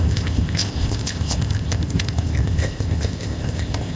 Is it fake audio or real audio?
fake